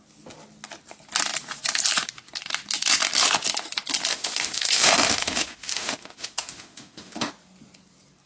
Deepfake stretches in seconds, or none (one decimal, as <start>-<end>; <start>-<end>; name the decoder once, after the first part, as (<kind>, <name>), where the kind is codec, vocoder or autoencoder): 4.1-7.3 (autoencoder, DAC-VAE)